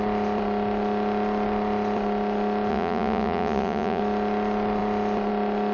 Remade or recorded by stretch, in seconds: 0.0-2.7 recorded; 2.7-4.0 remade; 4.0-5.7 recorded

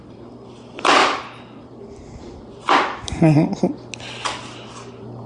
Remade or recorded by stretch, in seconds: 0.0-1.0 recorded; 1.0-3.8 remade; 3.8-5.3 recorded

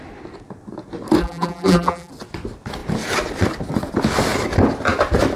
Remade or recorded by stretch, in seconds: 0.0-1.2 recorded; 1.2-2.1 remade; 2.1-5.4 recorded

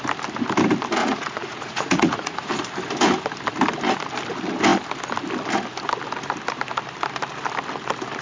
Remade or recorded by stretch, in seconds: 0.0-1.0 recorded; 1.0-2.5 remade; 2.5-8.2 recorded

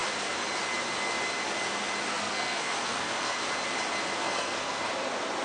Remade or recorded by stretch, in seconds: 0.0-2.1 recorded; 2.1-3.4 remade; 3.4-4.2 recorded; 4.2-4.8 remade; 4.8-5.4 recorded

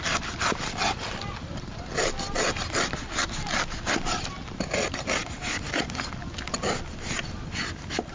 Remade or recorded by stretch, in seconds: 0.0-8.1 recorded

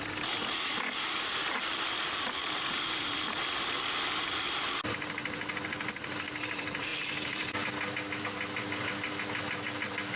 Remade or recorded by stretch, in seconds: 0.0-10.2 recorded

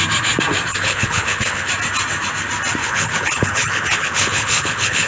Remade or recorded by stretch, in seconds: 0.0-0.7 recorded; 0.7-1.7 remade; 1.7-2.8 recorded; 2.8-5.1 remade